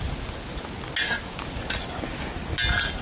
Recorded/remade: recorded